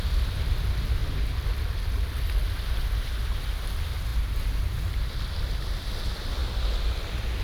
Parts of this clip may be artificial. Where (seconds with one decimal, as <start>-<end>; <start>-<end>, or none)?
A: none